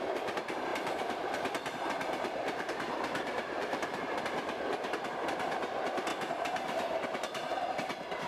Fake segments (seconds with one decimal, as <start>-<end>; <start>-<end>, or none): 0.7-4.2; 6.1-7.5